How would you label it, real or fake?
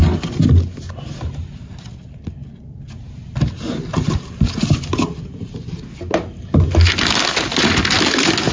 real